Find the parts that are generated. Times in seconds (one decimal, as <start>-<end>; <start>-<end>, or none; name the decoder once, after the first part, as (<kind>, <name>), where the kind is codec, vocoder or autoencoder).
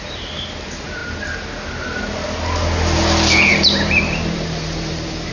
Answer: 3.5-5.3 (vocoder, BigVGAN v2)